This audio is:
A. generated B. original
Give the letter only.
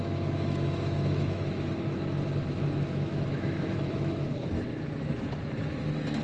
A